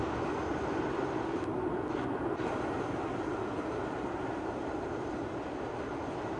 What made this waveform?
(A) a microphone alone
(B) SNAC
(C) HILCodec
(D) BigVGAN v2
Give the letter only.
A